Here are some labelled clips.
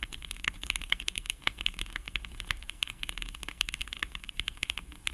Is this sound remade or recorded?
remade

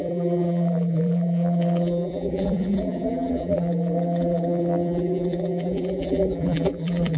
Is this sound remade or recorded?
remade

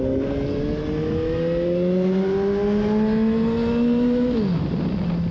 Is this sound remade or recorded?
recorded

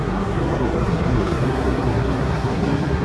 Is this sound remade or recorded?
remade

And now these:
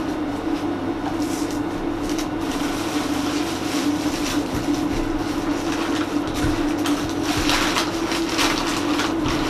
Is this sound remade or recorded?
recorded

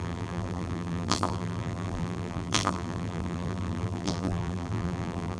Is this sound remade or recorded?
remade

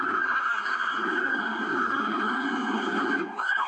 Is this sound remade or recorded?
remade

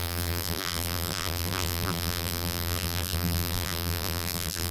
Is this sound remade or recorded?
remade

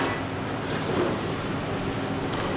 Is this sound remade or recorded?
recorded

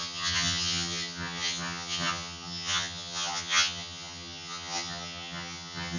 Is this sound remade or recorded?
remade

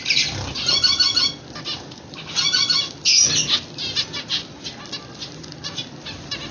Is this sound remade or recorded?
recorded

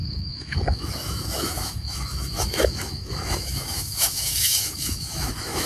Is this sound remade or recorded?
remade